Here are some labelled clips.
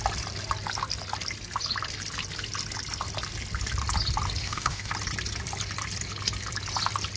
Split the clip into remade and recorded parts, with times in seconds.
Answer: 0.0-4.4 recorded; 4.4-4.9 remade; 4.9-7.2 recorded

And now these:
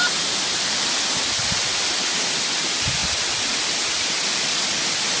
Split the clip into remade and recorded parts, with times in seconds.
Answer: 0.0-5.2 recorded

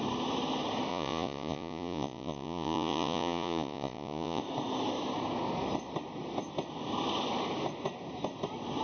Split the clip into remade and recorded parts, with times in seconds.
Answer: 0.0-0.9 recorded; 0.9-4.4 remade; 4.4-8.8 recorded

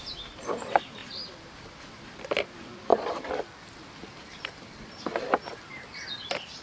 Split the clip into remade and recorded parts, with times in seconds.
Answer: 0.0-1.0 recorded; 1.0-2.4 remade; 2.4-2.9 recorded; 2.9-4.6 remade; 4.6-6.6 recorded

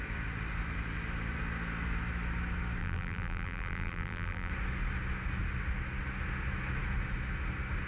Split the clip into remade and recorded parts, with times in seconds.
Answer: 0.0-2.8 recorded; 2.8-4.5 remade; 4.5-7.9 recorded

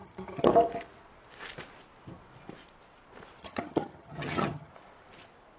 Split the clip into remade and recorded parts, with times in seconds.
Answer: 0.0-0.5 remade; 0.5-3.4 recorded; 3.4-4.7 remade; 4.7-5.6 recorded